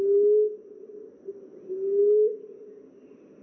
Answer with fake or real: real